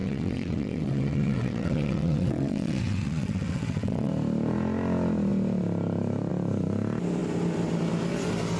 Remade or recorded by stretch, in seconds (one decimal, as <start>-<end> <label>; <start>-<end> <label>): 0.0-4.1 remade; 4.1-8.6 recorded